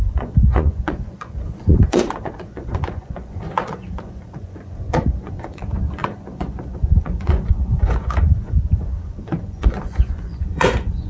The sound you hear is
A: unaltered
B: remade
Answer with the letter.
B